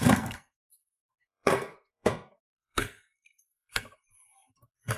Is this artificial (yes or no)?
yes